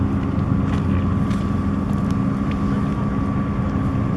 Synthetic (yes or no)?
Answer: no